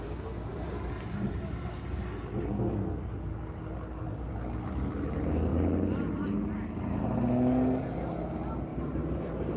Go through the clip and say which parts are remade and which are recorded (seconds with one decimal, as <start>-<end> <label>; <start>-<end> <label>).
0.0-0.5 recorded; 0.5-1.8 remade; 1.8-8.7 recorded; 8.7-9.6 remade